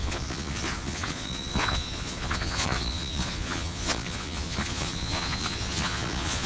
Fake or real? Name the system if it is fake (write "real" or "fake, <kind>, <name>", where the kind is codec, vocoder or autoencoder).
fake, vocoder, Vocos